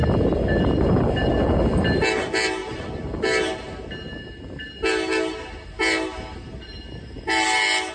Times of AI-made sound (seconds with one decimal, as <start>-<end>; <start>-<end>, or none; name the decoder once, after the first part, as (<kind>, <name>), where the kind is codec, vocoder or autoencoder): none